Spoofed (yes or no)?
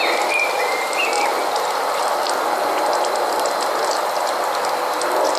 no